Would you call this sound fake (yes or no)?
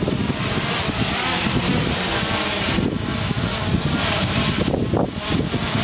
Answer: no